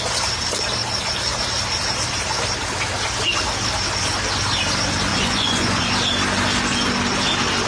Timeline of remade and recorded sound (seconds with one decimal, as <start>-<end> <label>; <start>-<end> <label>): 0.0-5.1 recorded; 5.1-5.9 remade; 5.9-7.7 recorded